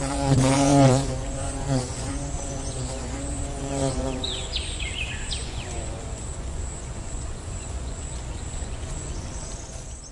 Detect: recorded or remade remade